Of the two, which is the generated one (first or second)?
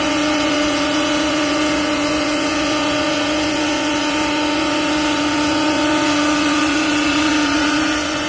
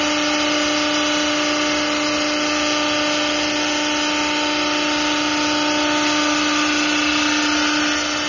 first